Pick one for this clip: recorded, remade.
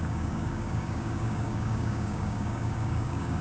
remade